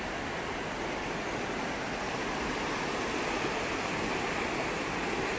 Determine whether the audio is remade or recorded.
recorded